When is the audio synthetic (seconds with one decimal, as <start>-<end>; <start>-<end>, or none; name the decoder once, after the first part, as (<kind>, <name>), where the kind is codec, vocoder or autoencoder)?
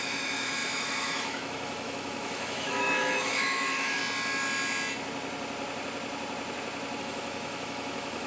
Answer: 0.0-4.0 (autoencoder, DAC-VAE); 7.0-8.3